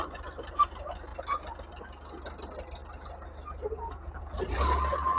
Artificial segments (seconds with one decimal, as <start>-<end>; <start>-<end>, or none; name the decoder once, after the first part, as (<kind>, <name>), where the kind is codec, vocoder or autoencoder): none